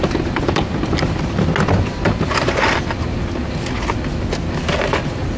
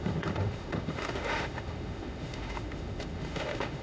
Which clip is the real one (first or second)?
first